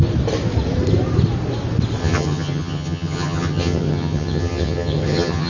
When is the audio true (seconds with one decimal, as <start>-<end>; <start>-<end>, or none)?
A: 0.0-2.0